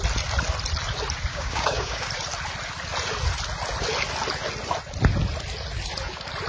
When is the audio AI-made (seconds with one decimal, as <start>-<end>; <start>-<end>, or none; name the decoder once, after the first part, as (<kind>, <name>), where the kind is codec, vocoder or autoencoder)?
1.3-2.1 (codec, DAC)